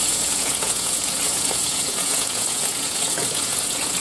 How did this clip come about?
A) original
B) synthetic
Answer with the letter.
B